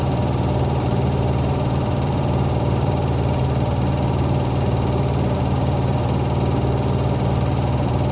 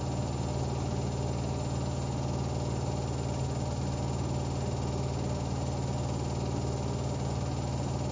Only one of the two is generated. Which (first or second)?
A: first